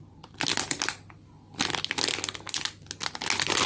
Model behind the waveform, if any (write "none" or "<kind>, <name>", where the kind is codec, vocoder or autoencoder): none